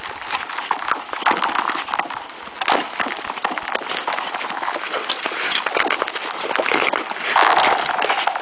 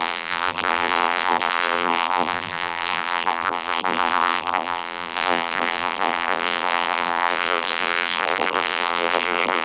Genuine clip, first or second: first